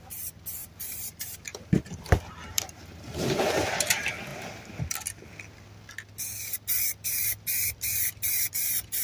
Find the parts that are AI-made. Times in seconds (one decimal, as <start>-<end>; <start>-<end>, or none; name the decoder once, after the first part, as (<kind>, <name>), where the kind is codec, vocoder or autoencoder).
0.6-3.8 (vocoder, BigVGAN v2)